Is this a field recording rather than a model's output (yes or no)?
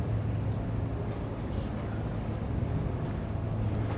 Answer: yes